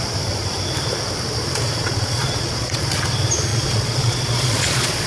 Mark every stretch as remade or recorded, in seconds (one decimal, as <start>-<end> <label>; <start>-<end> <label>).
0.0-1.8 recorded; 1.8-2.8 remade; 2.8-3.5 recorded; 3.5-5.1 remade